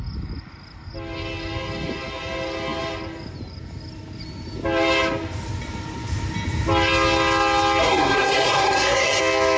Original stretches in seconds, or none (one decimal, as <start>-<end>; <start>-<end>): 0.0-7.8; 9.2-9.6